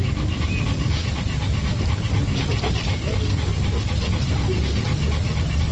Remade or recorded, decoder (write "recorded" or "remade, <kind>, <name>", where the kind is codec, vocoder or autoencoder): recorded